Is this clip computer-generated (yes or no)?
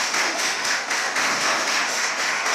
yes